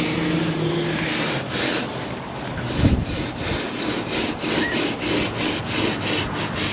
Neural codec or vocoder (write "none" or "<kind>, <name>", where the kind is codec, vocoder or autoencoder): none